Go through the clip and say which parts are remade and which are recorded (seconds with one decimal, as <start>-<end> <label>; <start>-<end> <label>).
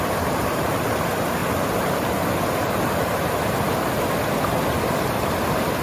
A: 0.0-1.4 remade; 1.4-4.9 recorded; 4.9-5.8 remade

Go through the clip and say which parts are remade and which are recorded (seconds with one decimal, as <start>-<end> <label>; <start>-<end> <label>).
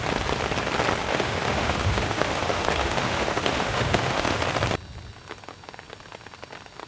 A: 0.0-1.1 recorded; 1.1-4.4 remade; 4.4-6.9 recorded